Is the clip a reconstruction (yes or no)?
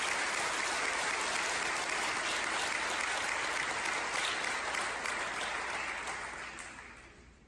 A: no